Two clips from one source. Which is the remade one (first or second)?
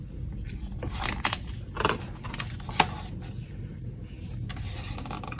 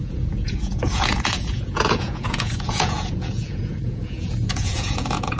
second